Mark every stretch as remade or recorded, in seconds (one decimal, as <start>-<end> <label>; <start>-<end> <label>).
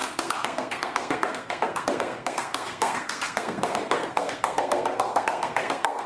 0.0-6.1 remade